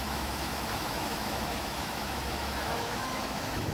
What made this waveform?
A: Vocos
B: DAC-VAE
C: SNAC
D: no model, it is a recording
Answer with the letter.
B